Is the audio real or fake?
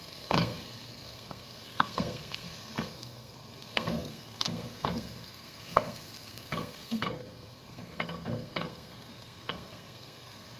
fake